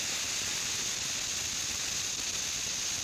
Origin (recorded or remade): recorded